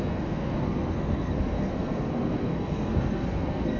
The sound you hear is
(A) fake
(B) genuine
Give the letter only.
A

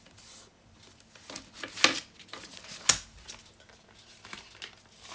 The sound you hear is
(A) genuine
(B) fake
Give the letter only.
A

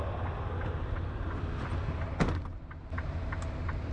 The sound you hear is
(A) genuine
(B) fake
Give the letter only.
A